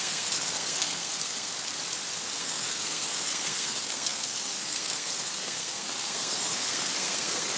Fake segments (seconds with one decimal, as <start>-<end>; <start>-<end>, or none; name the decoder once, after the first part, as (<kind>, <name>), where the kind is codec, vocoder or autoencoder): 0.0-1.5 (codec, SNAC); 2.4-7.6